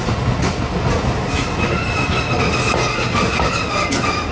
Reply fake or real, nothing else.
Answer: real